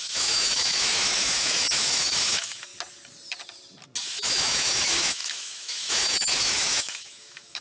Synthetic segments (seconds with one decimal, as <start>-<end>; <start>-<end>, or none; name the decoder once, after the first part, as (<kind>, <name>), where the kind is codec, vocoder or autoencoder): 0.0-2.7 (autoencoder, DAC-VAE); 4.0-7.6